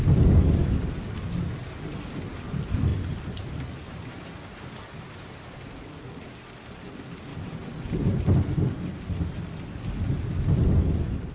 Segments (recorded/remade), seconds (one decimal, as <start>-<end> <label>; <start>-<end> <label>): 0.0-0.6 recorded; 0.6-1.6 remade; 1.6-2.9 recorded; 2.9-3.9 remade; 3.9-11.3 recorded